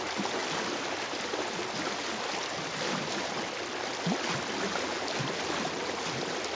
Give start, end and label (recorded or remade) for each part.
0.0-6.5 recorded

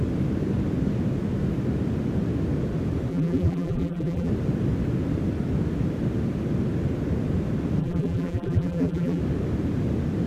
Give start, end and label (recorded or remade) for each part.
0.0-3.1 recorded; 3.1-4.3 remade; 4.3-7.8 recorded; 7.8-9.2 remade; 9.2-10.3 recorded

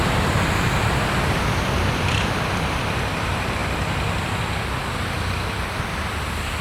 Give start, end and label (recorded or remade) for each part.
0.0-3.6 remade; 3.6-4.2 recorded; 4.2-6.6 remade